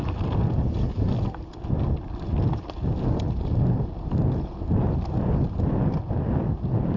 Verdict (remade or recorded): recorded